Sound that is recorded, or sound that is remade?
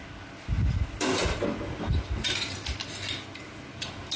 recorded